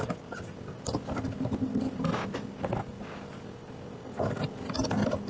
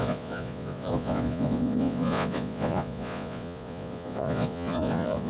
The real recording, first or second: first